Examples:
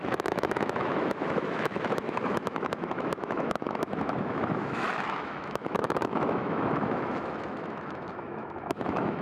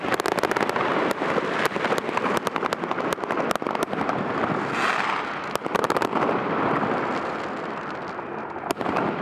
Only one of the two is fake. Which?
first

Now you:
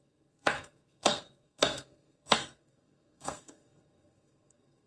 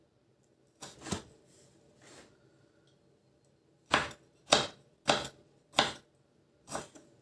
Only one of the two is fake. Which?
first